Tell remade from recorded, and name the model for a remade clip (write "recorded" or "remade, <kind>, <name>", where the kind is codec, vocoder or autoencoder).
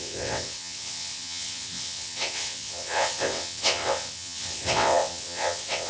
remade, vocoder, WaveNeXt